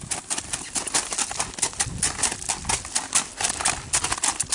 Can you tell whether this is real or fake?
real